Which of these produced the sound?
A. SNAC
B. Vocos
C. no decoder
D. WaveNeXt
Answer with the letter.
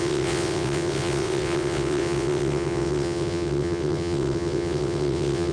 D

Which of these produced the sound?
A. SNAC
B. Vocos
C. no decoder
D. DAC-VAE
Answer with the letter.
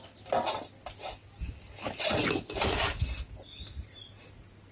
C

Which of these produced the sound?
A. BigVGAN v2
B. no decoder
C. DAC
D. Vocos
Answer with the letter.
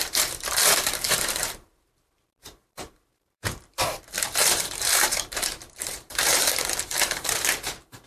A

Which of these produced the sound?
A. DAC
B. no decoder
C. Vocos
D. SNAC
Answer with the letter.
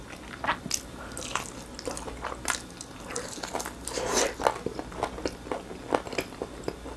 B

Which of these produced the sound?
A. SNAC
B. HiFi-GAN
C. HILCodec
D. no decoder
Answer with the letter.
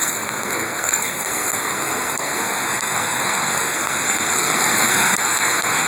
A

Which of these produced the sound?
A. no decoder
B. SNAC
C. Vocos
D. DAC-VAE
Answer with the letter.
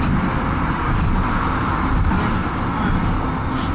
A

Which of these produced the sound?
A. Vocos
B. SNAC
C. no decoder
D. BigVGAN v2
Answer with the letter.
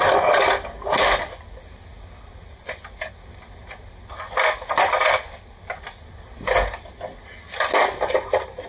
C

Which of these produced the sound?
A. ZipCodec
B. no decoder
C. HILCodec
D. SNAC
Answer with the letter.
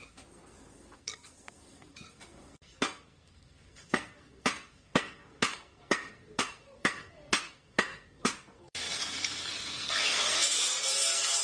D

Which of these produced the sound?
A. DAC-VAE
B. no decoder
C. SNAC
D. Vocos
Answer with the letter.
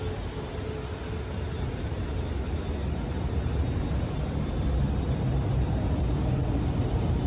B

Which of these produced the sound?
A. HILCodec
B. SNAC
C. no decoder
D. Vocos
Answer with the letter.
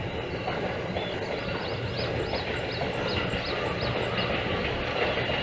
C